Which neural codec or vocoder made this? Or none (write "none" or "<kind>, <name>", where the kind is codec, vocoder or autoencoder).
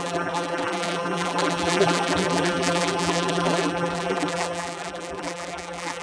vocoder, BigVGAN v2